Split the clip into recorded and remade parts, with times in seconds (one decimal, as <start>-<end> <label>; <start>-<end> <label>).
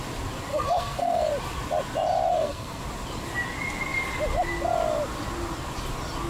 0.0-0.5 recorded; 0.5-1.3 remade; 1.3-2.3 recorded; 2.3-2.8 remade; 2.8-6.3 recorded